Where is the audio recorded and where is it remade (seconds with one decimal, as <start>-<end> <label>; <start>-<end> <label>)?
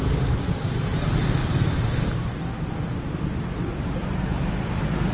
0.0-4.0 recorded; 4.0-4.6 remade; 4.6-5.1 recorded